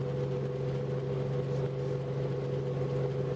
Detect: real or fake real